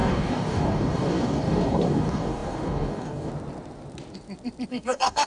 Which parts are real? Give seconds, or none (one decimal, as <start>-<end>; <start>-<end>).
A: 3.3-4.7